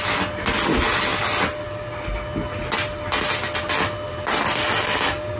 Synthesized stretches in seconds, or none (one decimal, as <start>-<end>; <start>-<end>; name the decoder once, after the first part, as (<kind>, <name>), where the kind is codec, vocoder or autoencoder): none